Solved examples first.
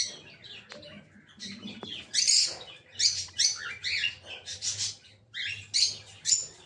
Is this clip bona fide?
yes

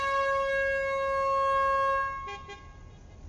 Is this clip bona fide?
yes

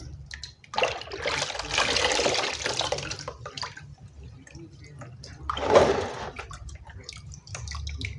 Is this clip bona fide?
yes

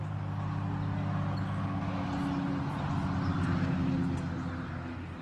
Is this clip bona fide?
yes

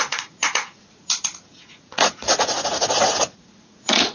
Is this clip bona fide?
no